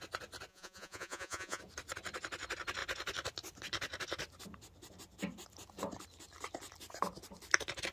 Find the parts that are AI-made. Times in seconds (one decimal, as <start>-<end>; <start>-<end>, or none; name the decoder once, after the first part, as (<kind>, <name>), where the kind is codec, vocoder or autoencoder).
0.5-1.6 (vocoder, Vocos)